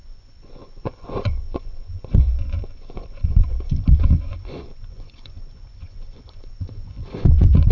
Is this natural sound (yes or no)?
no